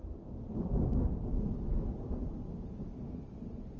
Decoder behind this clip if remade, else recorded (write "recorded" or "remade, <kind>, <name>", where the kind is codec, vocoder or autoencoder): recorded